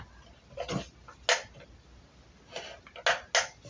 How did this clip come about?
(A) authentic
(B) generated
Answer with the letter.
A